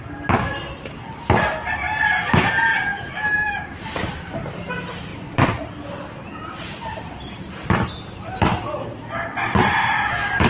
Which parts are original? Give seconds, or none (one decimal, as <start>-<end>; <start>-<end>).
0.0-2.9; 3.8-10.5